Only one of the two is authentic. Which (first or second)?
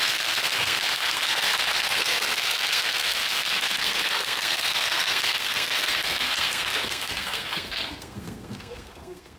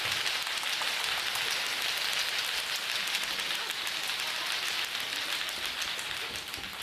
second